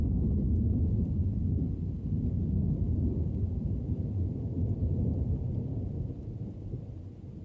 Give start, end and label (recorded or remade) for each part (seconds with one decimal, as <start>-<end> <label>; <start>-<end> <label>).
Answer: 0.0-7.4 recorded